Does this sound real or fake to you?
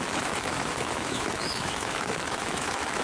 fake